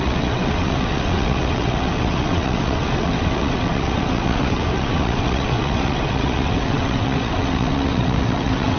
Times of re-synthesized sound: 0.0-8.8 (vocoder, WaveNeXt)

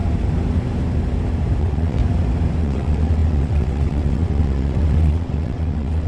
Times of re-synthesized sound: 1.6-2.0 (vocoder, WaveNeXt); 2.6-6.1

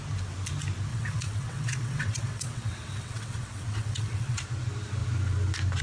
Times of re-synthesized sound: 0.9-4.4 (vocoder, WaveNeXt)

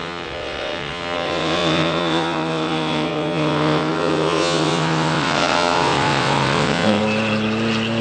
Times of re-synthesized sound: 0.0-7.0 (vocoder, WaveNeXt)

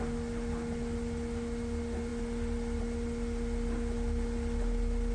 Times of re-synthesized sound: none

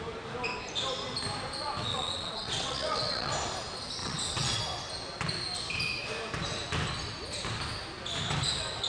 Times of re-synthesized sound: 1.9-3.3 (vocoder, WaveNeXt); 4.0-4.6

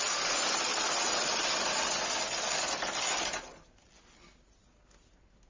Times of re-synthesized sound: none